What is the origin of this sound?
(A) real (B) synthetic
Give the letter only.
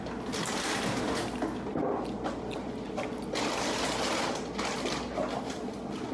A